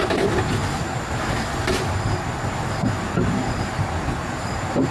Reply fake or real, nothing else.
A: fake